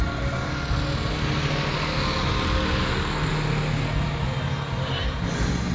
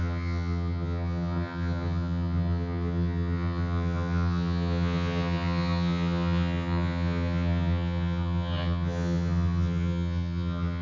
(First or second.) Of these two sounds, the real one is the first